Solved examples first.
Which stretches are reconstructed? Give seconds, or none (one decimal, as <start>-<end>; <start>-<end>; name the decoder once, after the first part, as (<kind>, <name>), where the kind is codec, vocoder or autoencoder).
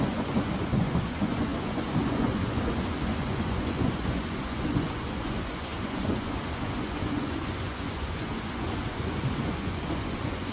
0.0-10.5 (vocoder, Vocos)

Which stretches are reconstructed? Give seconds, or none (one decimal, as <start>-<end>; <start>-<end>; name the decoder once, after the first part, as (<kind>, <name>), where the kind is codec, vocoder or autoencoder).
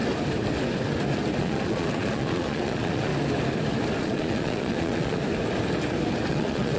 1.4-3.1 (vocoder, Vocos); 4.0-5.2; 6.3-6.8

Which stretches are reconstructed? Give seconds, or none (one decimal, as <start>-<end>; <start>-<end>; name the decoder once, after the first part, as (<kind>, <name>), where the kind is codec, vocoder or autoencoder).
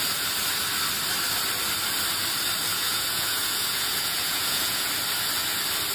2.7-4.9 (vocoder, Vocos)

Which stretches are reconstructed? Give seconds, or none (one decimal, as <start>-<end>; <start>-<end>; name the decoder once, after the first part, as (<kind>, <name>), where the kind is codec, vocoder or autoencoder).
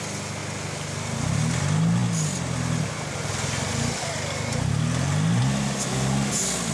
none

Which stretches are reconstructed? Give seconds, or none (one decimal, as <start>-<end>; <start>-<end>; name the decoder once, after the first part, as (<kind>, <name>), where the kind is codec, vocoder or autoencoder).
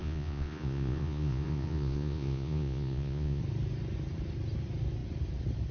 0.0-3.4 (vocoder, Vocos)